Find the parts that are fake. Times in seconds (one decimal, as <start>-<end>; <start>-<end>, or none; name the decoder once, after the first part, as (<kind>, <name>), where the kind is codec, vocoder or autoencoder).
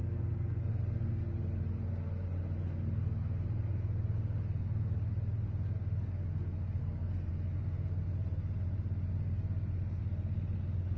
6.8-7.3 (codec, SNAC)